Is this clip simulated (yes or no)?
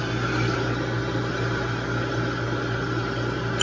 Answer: no